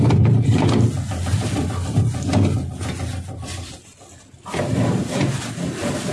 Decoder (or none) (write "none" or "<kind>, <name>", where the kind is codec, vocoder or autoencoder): none